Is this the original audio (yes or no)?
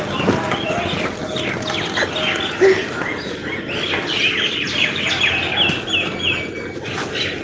yes